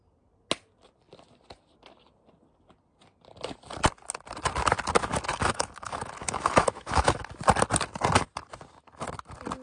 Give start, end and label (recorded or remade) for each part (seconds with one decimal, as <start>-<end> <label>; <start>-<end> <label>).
0.0-5.3 recorded; 5.3-7.2 remade; 7.2-9.6 recorded